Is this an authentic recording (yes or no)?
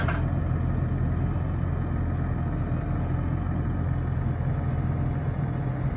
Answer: yes